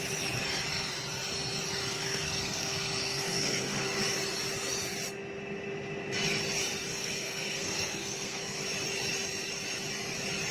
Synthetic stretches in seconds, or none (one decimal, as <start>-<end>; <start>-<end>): 1.8-4.0; 6.9-8.6